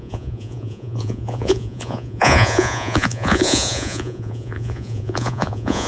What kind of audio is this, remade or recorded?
remade